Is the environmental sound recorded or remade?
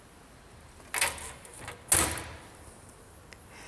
recorded